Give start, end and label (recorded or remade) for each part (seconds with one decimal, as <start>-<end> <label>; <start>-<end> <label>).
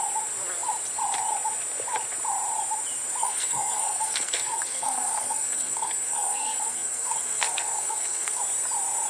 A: 0.0-3.2 recorded; 3.2-8.4 remade; 8.4-9.1 recorded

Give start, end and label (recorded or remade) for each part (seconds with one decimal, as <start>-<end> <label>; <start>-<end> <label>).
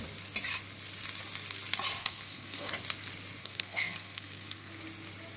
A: 0.0-2.0 recorded; 2.0-2.7 remade; 2.7-3.4 recorded; 3.4-4.7 remade; 4.7-5.4 recorded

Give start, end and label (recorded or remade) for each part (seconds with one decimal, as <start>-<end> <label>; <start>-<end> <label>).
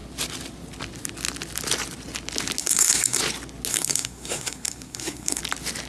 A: 0.0-2.6 recorded; 2.6-3.2 remade; 3.2-3.7 recorded; 3.7-5.4 remade; 5.4-5.9 recorded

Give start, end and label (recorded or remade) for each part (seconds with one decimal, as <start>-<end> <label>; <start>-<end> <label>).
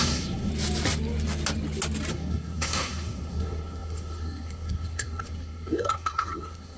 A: 0.0-0.5 remade; 0.5-2.1 recorded; 2.1-6.8 remade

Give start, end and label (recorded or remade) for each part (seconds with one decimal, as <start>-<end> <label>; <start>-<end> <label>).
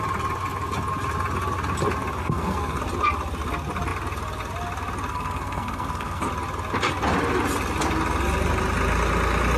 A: 0.0-2.2 recorded; 2.2-2.8 remade; 2.8-5.1 recorded; 5.1-6.3 remade; 6.3-9.6 recorded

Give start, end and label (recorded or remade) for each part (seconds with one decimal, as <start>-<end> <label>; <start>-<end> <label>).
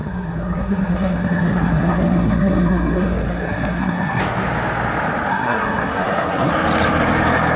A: 0.0-4.2 remade; 4.2-5.3 recorded; 5.3-6.5 remade; 6.5-7.6 recorded